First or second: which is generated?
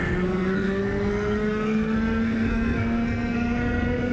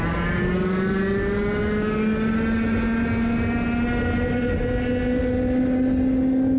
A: first